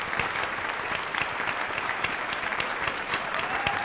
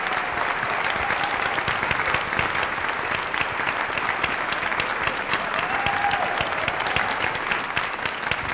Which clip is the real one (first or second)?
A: second